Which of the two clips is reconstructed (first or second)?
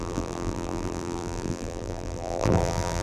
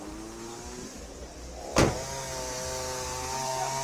first